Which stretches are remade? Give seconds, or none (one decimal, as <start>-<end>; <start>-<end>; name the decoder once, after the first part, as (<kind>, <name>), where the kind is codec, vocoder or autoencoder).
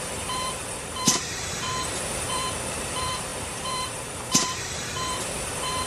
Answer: 0.0-5.9 (vocoder, BigVGAN v2)